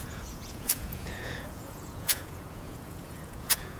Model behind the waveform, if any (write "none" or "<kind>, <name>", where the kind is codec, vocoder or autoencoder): vocoder, Vocos